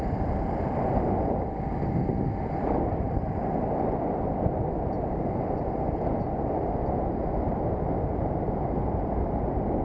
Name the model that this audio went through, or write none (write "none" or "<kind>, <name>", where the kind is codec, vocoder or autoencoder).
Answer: none